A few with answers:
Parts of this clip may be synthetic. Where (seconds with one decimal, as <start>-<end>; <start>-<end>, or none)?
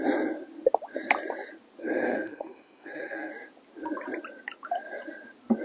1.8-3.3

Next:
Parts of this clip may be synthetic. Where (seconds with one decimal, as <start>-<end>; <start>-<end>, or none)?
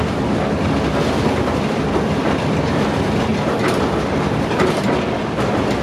none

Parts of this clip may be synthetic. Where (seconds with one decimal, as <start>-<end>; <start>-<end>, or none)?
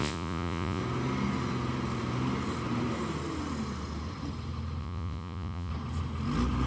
0.0-0.8; 4.8-5.7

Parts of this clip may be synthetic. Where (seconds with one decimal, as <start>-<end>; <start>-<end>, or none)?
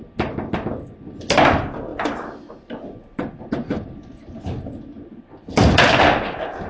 none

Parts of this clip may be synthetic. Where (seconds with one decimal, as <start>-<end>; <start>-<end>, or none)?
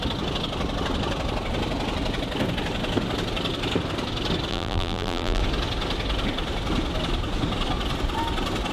4.5-5.4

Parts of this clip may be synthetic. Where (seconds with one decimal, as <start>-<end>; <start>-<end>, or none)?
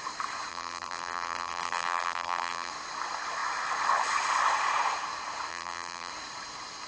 0.5-2.7; 5.5-6.1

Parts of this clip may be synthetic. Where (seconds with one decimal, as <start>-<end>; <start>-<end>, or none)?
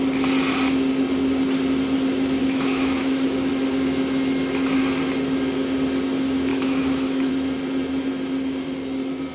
2.4-3.5; 6.5-7.3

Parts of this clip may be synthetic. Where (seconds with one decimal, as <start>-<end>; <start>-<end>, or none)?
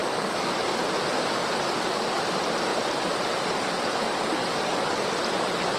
0.0-0.7; 4.4-5.1